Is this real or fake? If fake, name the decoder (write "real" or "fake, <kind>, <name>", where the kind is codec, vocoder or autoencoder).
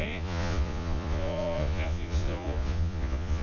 fake, vocoder, Vocos